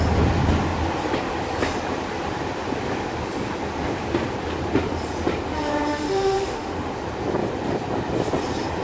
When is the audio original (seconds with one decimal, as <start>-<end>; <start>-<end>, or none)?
0.0-5.9; 6.9-8.8